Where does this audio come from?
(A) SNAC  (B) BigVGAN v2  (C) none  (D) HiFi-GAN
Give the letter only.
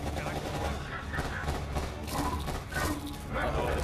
C